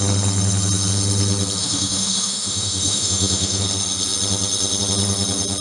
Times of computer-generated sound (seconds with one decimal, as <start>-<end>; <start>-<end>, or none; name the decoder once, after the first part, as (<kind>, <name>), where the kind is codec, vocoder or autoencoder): 1.6-3.6 (autoencoder, DAC-VAE)